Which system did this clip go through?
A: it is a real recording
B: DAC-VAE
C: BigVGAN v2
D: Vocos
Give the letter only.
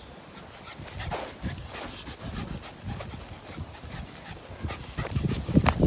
A